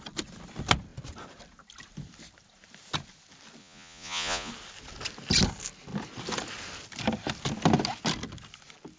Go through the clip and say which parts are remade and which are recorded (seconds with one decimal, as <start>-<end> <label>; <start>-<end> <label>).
0.0-3.6 recorded; 3.6-4.5 remade; 4.5-9.0 recorded